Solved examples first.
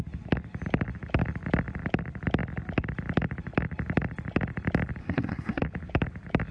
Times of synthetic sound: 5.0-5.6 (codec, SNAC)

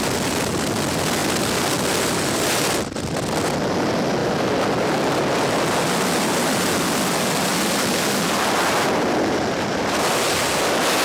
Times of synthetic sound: none